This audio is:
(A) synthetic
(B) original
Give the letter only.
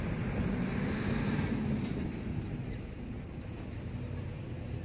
B